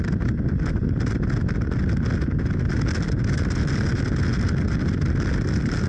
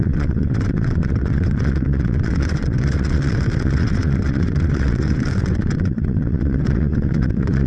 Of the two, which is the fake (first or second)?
second